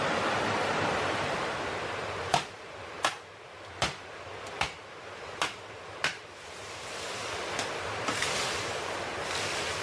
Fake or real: real